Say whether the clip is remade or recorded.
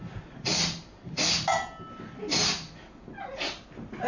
recorded